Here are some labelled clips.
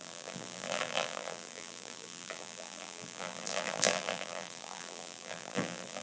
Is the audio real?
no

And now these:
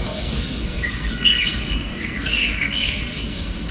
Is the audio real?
no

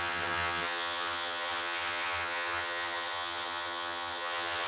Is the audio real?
no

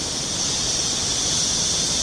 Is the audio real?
yes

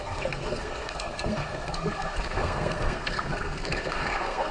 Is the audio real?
no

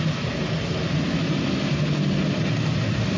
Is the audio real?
yes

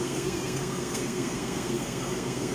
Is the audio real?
no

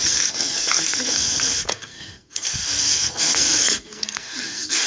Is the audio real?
no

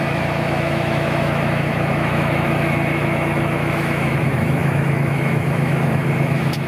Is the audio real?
no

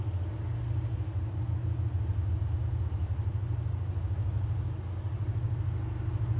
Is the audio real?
yes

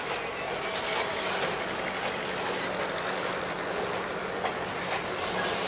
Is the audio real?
yes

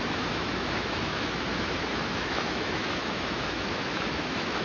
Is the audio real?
no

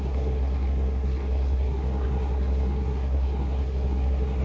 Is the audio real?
no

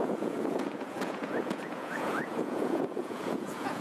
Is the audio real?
no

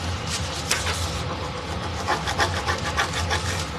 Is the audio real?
yes